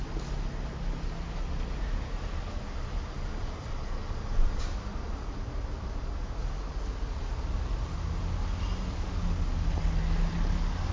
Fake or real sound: real